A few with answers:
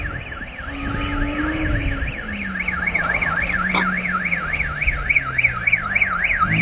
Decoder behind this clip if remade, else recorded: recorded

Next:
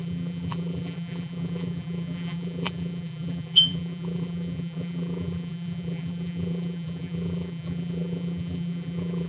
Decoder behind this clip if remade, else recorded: remade, vocoder, BigVGAN v2